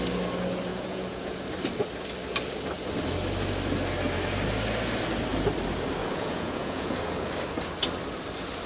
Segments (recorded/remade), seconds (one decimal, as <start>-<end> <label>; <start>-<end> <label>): 0.0-0.7 recorded; 0.7-1.4 remade; 1.4-6.0 recorded; 6.0-7.1 remade; 7.1-8.7 recorded